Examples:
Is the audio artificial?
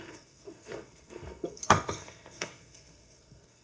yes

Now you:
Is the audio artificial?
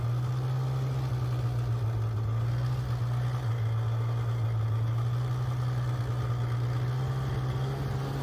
no